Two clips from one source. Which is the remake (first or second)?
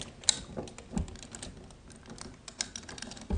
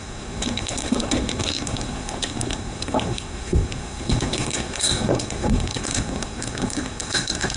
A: second